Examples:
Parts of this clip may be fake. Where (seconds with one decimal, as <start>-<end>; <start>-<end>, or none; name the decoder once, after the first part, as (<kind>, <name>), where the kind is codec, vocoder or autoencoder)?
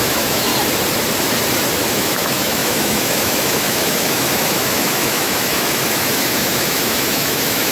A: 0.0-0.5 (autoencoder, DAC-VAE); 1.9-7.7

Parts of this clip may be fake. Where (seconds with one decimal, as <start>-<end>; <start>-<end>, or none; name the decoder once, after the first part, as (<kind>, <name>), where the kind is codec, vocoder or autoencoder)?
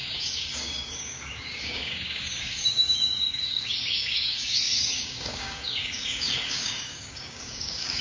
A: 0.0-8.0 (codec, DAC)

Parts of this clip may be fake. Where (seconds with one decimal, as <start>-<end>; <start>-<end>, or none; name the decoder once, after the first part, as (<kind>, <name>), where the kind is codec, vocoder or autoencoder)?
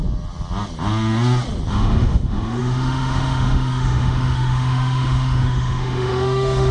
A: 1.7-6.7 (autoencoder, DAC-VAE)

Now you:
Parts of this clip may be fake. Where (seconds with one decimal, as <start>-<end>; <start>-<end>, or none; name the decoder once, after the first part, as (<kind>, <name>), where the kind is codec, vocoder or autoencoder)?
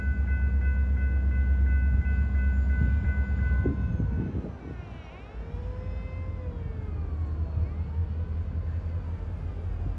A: none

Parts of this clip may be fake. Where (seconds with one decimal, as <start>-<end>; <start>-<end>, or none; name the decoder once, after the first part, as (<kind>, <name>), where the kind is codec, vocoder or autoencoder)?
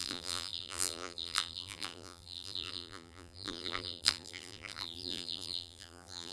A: 0.0-6.3 (vocoder, BigVGAN v2)